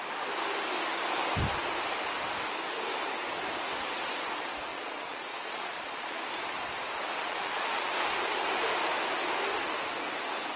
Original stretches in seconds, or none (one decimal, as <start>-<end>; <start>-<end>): 0.0-4.7; 6.2-7.2; 7.9-10.6